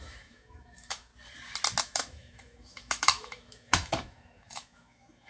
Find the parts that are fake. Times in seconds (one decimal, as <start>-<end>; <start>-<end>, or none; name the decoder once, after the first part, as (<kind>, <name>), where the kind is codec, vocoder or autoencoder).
0.0-1.1 (autoencoder, DAC-VAE); 1.8-5.3